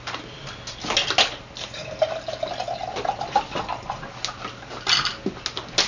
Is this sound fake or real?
real